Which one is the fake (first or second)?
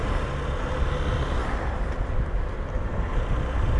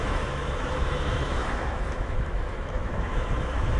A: second